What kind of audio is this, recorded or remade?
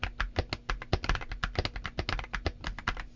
recorded